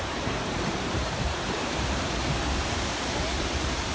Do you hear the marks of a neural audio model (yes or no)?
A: yes